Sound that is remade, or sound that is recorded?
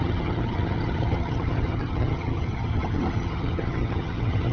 remade